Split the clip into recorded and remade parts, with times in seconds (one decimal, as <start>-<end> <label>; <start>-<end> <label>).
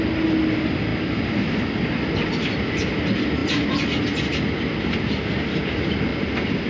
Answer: 0.0-6.7 recorded